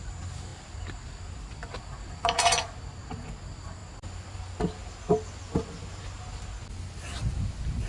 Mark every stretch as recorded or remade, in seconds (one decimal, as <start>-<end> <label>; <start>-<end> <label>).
0.0-7.9 recorded